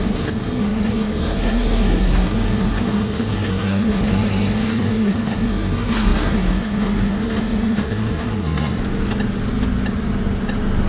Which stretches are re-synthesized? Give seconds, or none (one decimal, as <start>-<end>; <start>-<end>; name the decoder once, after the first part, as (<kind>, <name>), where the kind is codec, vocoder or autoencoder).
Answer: 0.0-8.8 (codec, SNAC)